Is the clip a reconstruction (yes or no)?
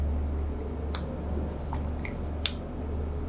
no